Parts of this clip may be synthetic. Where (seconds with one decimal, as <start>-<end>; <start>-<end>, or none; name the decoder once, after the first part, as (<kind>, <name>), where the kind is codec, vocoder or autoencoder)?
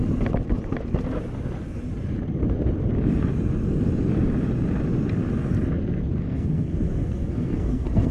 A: 6.2-8.1 (codec, SNAC)